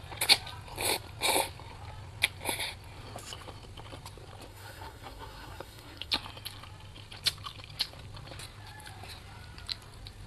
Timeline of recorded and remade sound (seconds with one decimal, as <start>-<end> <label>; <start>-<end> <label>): 0.0-4.5 recorded; 4.5-6.1 remade; 6.1-10.3 recorded